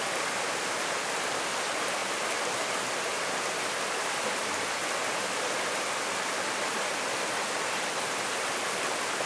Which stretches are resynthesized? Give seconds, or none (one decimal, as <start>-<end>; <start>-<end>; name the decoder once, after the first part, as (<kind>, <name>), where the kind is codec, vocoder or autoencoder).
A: none